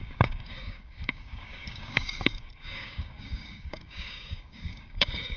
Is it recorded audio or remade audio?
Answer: remade